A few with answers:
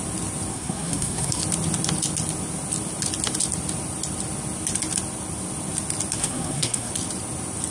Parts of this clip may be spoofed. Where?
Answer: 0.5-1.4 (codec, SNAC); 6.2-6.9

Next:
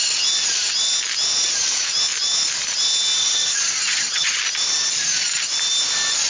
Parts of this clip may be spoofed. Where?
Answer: 3.2-4.4 (vocoder, HiFi-GAN)